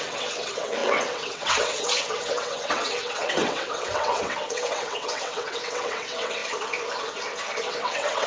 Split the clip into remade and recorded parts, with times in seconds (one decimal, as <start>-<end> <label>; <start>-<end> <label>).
0.0-6.4 remade; 6.4-7.7 recorded; 7.7-8.3 remade

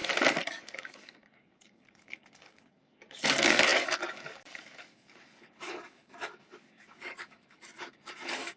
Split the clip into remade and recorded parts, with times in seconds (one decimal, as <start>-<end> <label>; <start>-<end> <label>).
0.0-0.5 recorded; 0.5-8.6 remade

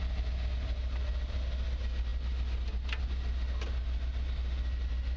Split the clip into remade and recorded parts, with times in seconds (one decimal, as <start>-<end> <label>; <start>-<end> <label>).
0.0-5.2 recorded

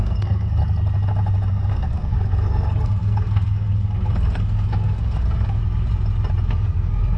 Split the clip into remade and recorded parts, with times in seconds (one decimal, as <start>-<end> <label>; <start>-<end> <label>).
0.0-0.6 remade; 0.6-1.5 recorded; 1.5-5.6 remade; 5.6-6.5 recorded; 6.5-7.2 remade